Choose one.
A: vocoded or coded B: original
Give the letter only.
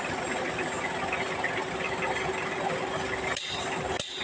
B